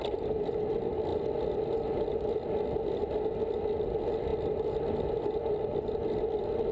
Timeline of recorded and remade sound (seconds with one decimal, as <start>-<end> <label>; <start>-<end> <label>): 0.0-6.7 recorded